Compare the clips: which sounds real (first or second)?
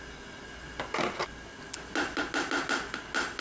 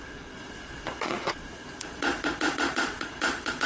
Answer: first